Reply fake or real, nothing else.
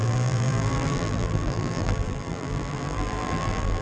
fake